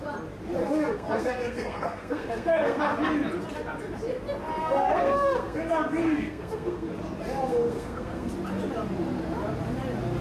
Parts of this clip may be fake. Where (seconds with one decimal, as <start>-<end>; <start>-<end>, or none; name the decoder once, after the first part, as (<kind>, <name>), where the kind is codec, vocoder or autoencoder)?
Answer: 0.6-2.8 (codec, SNAC); 4.6-6.9; 7.4-8.3